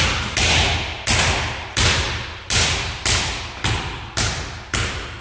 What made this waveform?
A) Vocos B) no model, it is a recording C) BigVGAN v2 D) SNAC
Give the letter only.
B